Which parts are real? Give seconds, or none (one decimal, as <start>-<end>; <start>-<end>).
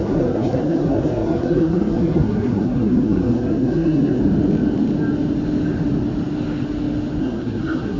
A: 4.2-7.2